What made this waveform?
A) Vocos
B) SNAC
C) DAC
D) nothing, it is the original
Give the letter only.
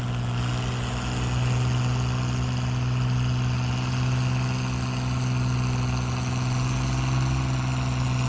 D